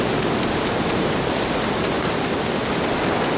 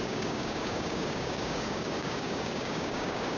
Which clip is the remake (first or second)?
second